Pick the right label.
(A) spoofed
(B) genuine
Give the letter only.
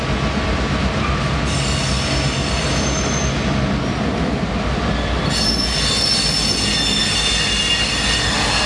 B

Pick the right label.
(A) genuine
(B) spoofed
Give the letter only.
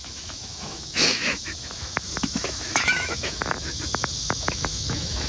B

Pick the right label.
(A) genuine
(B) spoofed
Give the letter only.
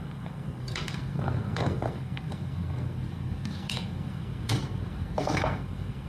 B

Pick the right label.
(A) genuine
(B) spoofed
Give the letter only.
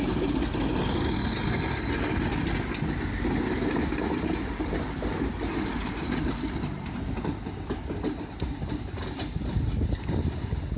A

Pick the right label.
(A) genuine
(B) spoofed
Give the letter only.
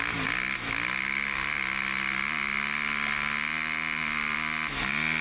A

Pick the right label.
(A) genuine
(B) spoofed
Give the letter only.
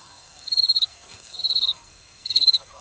B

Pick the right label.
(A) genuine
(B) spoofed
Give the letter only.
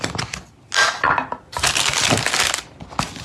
A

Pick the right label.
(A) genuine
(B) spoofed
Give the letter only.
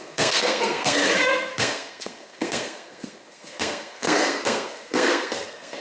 B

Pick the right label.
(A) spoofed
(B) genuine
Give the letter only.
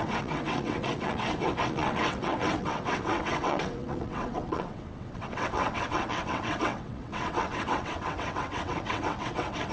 A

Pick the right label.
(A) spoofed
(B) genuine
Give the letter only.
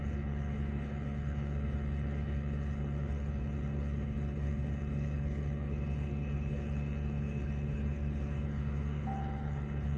A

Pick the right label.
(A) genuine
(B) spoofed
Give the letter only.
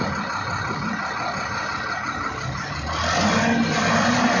A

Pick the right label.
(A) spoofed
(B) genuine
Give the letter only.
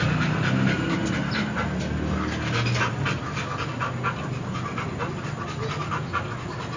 B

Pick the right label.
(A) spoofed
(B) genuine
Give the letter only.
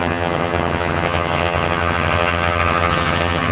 A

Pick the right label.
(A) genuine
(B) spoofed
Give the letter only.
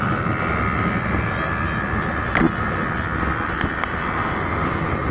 A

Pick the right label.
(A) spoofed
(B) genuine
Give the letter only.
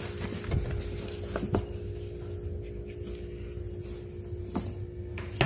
B